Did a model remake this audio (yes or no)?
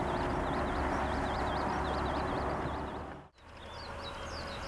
no